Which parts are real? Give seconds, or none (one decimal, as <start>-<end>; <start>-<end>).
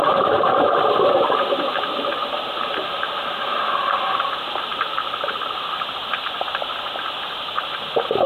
0.0-8.3